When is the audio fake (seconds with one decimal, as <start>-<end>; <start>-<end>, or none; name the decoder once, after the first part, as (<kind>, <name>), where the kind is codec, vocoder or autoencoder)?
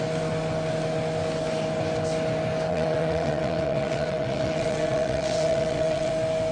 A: 2.7-6.1 (vocoder, WaveNeXt)